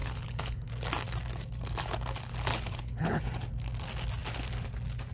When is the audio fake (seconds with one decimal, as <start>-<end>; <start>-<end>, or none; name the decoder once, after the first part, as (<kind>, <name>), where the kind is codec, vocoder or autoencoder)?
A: 0.0-0.7 (codec, HILCodec); 2.5-3.2